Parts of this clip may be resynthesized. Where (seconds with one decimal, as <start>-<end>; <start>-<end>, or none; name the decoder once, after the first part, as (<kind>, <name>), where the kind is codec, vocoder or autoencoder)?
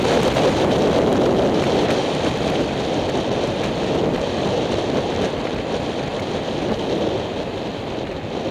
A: none